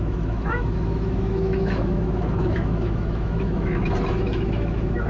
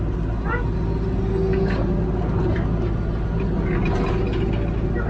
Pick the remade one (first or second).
first